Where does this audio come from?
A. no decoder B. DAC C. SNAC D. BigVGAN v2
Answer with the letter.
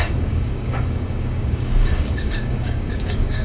B